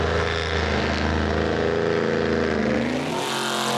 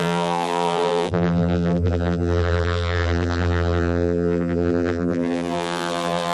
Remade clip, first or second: second